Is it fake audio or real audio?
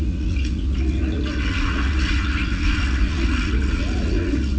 fake